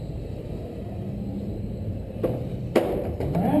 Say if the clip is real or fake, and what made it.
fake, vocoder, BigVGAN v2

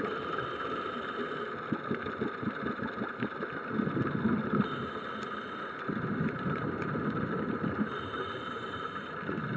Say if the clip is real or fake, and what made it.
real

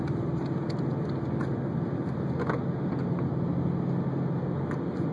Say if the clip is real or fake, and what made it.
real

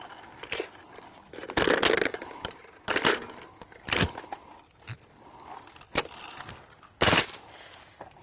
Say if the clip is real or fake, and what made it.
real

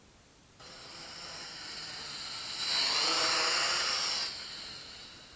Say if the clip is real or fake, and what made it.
real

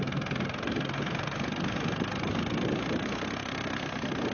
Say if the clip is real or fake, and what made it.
real